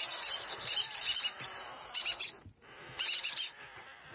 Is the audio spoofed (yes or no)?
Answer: yes